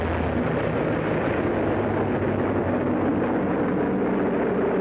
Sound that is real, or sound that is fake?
real